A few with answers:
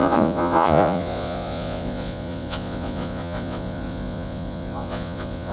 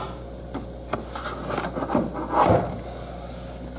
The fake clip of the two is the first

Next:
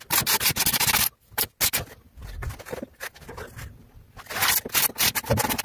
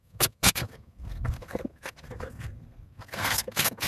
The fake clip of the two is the second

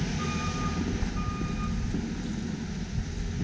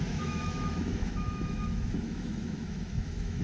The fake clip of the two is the second